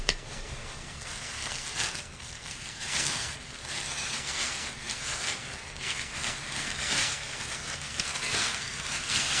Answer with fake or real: fake